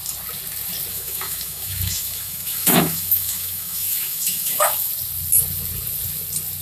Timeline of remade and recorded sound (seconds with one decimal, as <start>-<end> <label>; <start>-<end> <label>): 0.0-0.9 recorded; 0.9-4.9 remade; 4.9-6.6 recorded